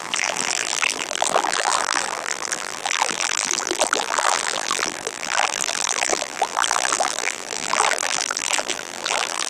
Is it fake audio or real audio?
fake